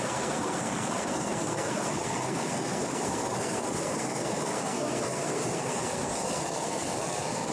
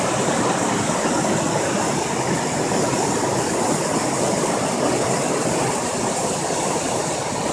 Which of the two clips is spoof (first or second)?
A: first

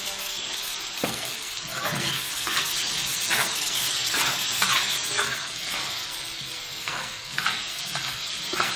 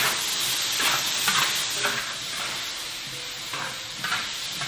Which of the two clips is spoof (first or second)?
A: first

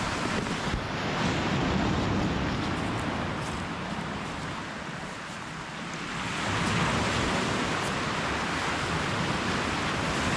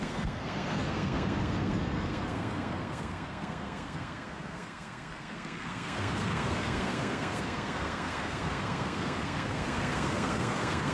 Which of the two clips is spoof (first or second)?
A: second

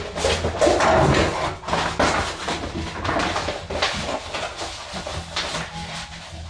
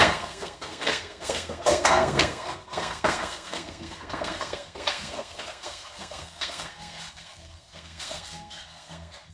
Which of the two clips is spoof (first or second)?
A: second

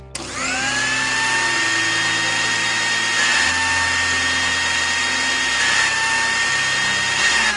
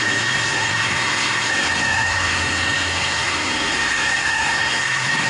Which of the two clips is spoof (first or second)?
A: second